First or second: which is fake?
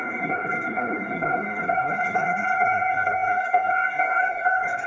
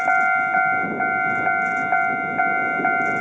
first